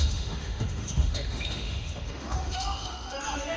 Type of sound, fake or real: fake